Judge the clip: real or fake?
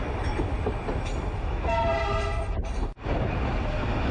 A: real